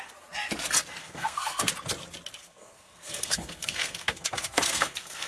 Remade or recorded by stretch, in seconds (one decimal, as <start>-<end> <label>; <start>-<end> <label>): 0.0-1.0 recorded; 1.0-1.7 remade; 1.7-2.4 recorded; 2.4-5.3 remade